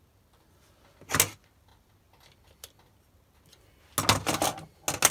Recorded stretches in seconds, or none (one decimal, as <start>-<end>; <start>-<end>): 0.0-5.1